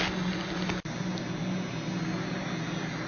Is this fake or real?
real